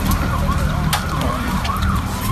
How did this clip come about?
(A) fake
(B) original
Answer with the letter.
B